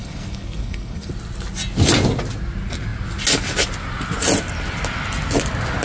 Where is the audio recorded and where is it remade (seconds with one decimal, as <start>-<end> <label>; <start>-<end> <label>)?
0.0-1.1 remade; 1.1-5.8 recorded